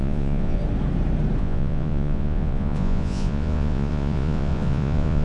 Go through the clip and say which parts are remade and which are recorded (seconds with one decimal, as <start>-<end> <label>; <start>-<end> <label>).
0.0-0.6 remade; 0.6-1.4 recorded; 1.4-5.2 remade